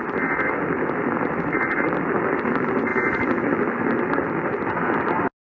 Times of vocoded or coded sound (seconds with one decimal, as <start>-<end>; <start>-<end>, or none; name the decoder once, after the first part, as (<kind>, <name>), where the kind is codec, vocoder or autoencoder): none